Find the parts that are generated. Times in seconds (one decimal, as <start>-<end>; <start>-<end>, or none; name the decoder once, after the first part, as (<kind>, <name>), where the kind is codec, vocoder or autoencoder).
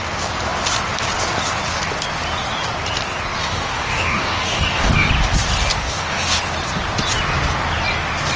3.4-5.1 (codec, DAC); 5.8-6.4